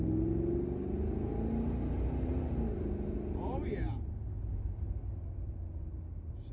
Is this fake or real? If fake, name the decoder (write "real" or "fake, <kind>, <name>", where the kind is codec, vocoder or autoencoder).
real